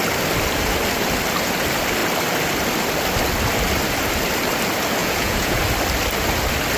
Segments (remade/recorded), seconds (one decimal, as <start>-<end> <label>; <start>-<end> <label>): 0.0-5.0 recorded; 5.0-5.6 remade; 5.6-6.8 recorded

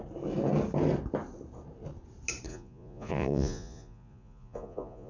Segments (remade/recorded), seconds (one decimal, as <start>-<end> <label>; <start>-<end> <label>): 0.0-2.5 recorded; 2.5-5.1 remade